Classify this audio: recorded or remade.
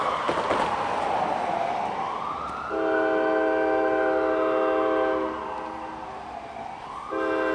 recorded